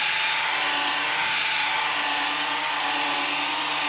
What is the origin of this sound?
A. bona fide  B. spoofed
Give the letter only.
A